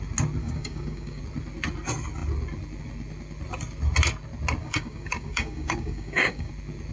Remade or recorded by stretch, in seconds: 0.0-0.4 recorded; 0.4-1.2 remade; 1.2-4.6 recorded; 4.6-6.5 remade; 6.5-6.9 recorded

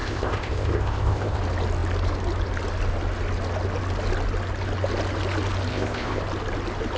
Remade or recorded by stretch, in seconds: 0.0-1.4 remade; 1.4-5.7 recorded; 5.7-6.2 remade; 6.2-7.0 recorded

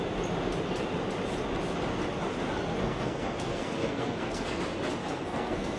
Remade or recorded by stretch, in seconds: 0.0-2.8 recorded; 2.8-4.6 remade; 4.6-5.0 recorded; 5.0-5.8 remade

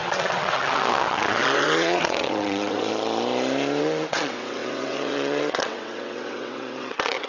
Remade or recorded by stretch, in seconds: 0.0-2.9 remade; 2.9-3.8 recorded; 3.8-7.3 remade

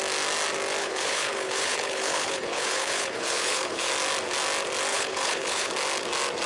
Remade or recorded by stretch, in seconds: 0.0-0.8 recorded; 0.8-3.9 remade; 3.9-4.9 recorded; 4.9-5.7 remade; 5.7-6.5 recorded

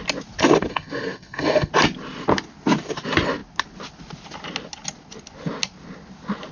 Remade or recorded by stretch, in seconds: 0.0-0.7 recorded; 0.7-1.7 remade; 1.7-6.5 recorded

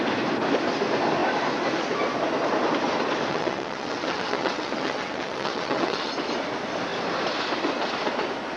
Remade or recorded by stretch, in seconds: 0.0-3.3 recorded; 3.3-6.1 remade; 6.1-8.6 recorded

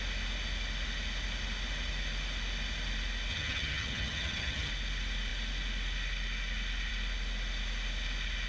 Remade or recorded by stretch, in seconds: 0.0-3.3 recorded; 3.3-4.7 remade; 4.7-8.5 recorded